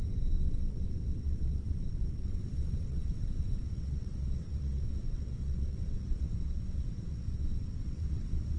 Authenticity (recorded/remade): remade